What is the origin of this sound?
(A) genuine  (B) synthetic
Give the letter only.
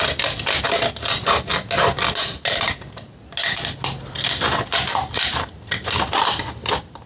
A